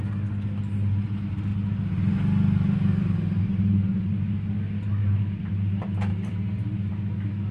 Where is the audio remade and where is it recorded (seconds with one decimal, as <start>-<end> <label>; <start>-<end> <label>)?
0.0-5.0 recorded; 5.0-5.5 remade; 5.5-6.1 recorded; 6.1-6.9 remade; 6.9-7.5 recorded